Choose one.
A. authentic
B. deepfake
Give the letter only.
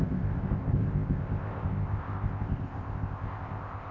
B